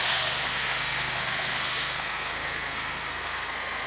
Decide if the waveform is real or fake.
fake